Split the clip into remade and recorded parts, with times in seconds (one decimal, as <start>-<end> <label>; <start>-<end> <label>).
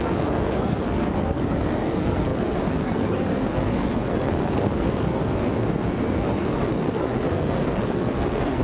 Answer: 0.0-8.6 remade